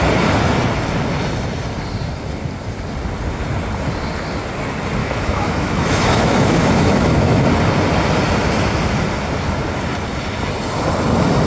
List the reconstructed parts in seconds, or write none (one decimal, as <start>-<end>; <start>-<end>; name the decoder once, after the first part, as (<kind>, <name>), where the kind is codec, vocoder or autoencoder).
5.0-7.4 (autoencoder, DAC-VAE)